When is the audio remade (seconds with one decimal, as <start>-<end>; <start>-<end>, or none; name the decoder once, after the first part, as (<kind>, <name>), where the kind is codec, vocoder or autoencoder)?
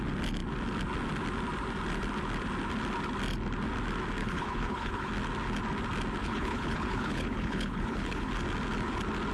4.2-5.1 (codec, HILCodec); 6.2-8.3